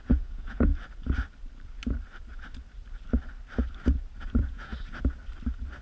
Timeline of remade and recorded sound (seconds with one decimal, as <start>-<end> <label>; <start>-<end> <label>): 0.0-0.7 remade; 0.7-4.2 recorded; 4.2-4.7 remade; 4.7-5.8 recorded